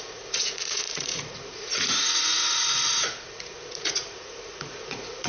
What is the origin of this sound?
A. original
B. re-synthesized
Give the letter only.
B